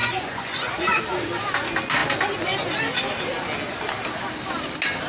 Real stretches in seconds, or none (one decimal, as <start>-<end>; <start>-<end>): 1.0-5.1